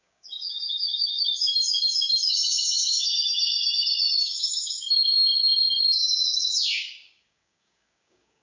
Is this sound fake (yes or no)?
yes